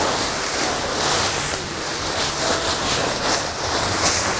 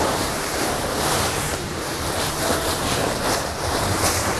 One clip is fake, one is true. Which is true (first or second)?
first